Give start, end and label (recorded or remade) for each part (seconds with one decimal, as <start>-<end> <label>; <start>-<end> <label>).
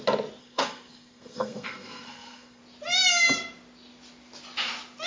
0.0-0.4 recorded; 0.4-2.6 remade; 2.6-5.1 recorded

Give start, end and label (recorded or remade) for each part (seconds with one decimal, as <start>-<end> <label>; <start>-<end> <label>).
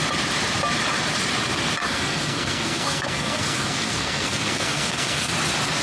0.0-1.8 recorded; 1.8-5.3 remade; 5.3-5.8 recorded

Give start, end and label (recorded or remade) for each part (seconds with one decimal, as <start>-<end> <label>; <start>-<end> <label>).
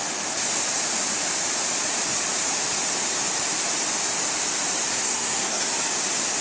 0.0-4.9 recorded; 4.9-5.7 remade; 5.7-6.4 recorded